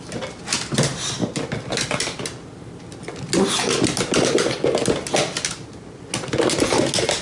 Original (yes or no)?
yes